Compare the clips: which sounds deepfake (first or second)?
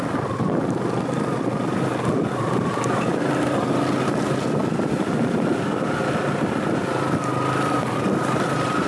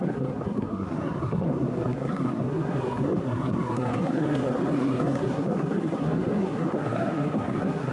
second